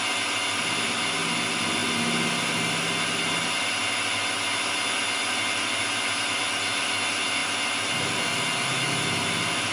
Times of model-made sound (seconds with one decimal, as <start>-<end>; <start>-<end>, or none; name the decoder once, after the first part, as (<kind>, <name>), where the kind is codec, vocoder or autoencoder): none